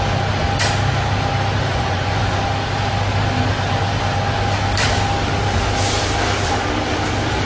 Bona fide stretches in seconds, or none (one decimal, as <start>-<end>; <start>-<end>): 0.0-1.7; 2.4-7.5